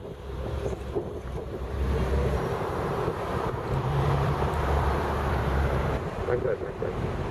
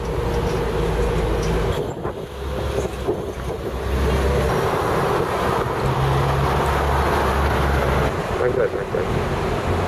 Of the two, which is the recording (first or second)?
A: second